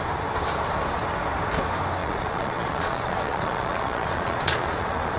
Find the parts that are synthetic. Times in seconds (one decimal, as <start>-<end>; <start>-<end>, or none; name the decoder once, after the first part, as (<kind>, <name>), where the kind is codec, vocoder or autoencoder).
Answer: 2.0-5.2 (vocoder, Vocos)